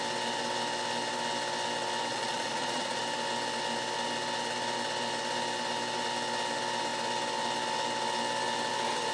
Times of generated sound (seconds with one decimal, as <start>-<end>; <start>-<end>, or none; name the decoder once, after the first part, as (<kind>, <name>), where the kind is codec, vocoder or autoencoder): 2.1-3.0 (vocoder, Vocos)